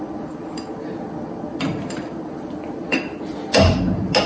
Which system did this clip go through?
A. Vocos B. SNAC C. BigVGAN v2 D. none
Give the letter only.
D